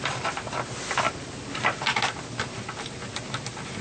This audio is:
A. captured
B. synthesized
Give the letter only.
A